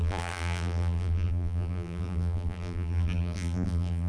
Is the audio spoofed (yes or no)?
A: yes